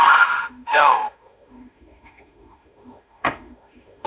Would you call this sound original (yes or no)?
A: no